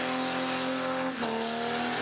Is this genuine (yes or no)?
yes